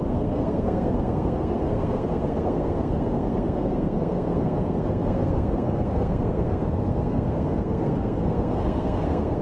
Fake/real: fake